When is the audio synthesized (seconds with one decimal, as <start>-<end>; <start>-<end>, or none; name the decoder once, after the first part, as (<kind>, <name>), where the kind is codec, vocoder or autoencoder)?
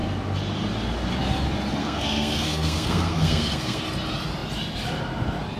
1.8-3.8 (codec, SNAC)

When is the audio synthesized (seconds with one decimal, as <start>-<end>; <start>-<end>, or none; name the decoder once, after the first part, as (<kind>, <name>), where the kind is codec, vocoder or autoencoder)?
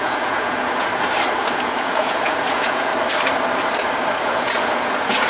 0.0-0.9 (vocoder, Vocos); 1.5-2.9; 4.2-5.3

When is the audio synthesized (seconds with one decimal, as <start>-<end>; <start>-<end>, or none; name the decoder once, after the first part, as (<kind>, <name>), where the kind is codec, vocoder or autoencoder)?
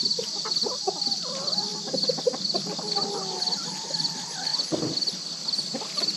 none